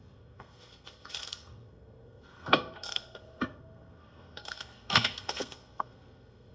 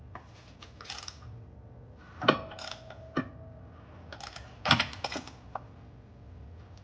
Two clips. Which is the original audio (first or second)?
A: second